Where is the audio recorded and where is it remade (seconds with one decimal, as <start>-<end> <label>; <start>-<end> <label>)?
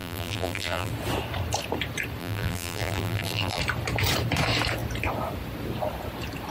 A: 0.0-0.9 remade; 0.9-2.2 recorded; 2.2-3.6 remade; 3.6-6.5 recorded